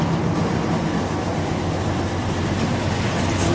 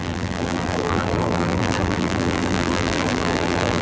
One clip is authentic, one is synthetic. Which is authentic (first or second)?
first